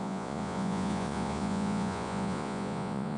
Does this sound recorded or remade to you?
remade